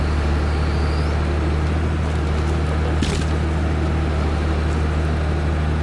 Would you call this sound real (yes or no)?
yes